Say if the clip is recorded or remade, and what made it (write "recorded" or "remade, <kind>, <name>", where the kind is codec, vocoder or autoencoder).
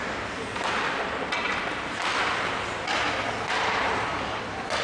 recorded